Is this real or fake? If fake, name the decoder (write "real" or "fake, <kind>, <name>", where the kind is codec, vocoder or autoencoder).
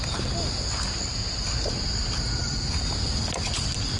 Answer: real